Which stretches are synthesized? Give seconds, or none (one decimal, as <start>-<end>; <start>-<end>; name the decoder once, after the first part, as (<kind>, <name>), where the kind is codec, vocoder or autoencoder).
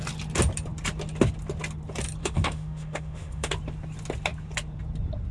2.2-3.5 (autoencoder, DAC-VAE)